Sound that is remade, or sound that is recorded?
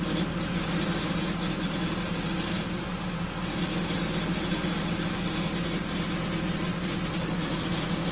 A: recorded